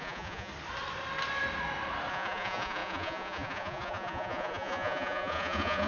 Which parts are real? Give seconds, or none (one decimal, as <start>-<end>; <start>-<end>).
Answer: 0.5-2.1